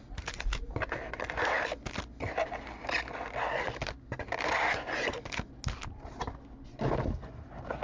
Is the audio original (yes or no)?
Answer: yes